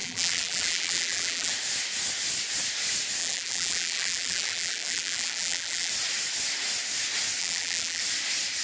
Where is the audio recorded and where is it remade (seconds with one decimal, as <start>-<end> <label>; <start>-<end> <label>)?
0.0-1.5 remade; 1.5-3.2 recorded; 3.2-5.9 remade; 5.9-7.4 recorded; 7.4-8.0 remade; 8.0-8.6 recorded